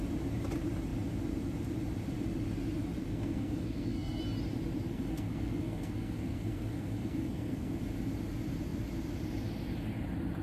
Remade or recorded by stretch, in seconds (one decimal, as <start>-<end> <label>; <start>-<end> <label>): 0.0-3.0 recorded; 3.0-4.2 remade; 4.2-4.9 recorded; 4.9-7.8 remade; 7.8-10.4 recorded